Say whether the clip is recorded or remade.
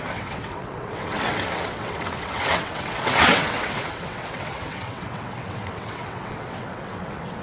remade